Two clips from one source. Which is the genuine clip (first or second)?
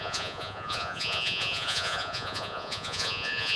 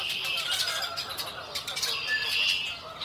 second